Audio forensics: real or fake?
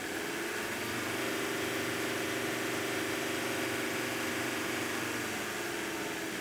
real